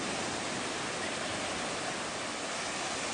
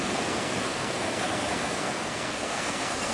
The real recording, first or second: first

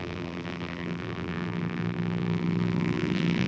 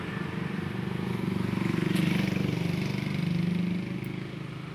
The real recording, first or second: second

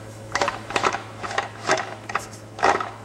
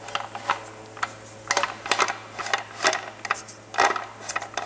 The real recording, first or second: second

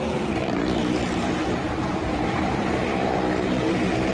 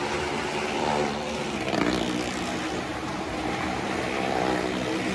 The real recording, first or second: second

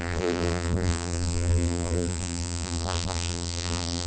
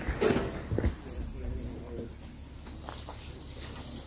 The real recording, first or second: second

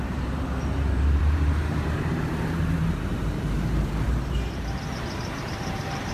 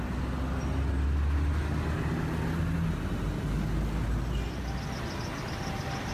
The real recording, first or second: second